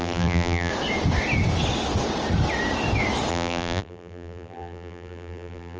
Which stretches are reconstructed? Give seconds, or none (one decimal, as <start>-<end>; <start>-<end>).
0.0-0.7; 3.3-5.8